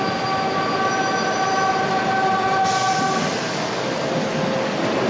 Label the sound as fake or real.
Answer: real